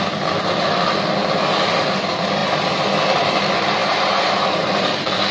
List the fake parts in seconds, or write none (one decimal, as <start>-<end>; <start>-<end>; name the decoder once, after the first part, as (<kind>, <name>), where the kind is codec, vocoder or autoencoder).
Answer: 3.8-5.3 (vocoder, BigVGAN v2)